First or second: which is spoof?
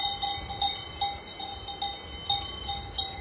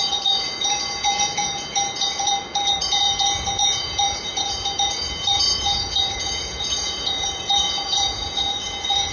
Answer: second